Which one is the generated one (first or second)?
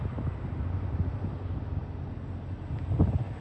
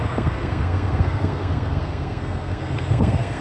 second